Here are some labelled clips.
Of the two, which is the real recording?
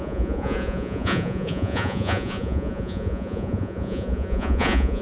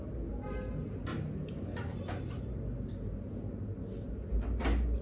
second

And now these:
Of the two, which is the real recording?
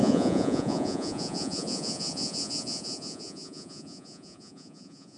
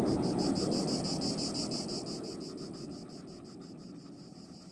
second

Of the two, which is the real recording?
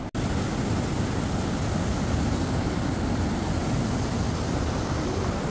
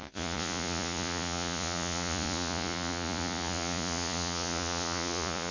first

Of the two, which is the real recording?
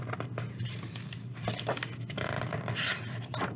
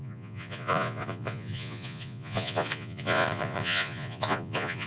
first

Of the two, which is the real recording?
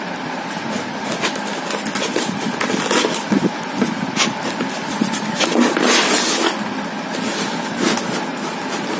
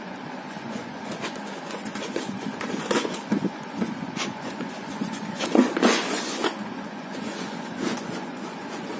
first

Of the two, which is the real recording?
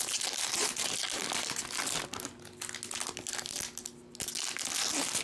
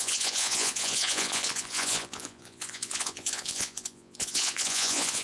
first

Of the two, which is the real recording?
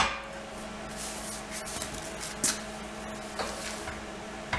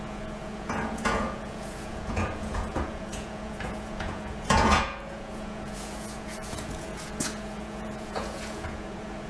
first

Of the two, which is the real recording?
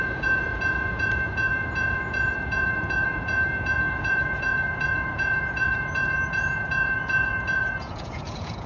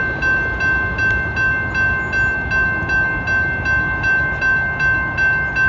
second